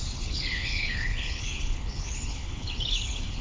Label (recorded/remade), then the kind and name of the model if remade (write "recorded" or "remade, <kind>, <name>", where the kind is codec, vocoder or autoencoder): remade, codec, HILCodec